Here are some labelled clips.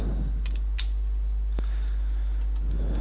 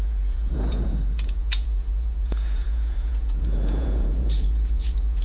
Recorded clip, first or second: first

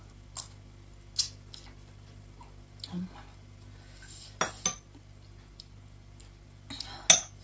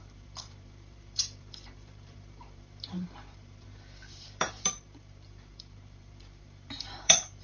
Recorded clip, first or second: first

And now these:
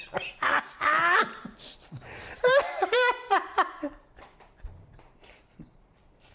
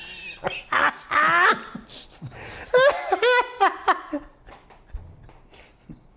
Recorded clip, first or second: second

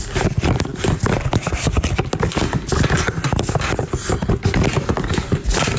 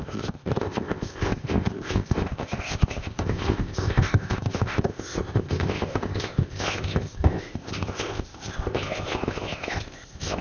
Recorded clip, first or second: first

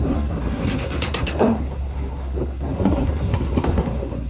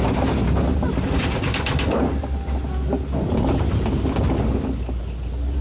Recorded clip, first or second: second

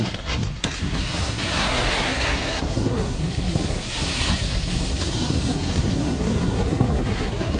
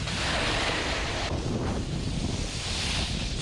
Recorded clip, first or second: second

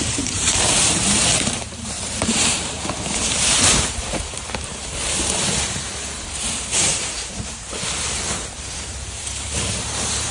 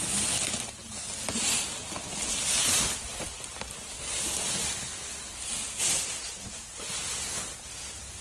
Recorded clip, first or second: second